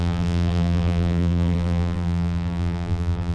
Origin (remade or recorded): remade